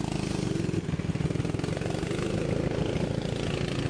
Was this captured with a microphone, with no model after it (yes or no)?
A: yes